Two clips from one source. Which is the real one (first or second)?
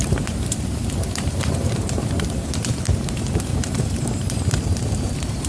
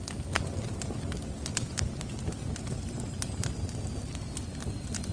second